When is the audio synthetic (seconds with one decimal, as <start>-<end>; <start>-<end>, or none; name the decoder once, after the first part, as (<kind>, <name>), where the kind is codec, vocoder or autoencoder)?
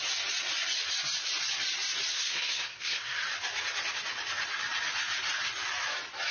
2.1-3.2 (codec, SNAC)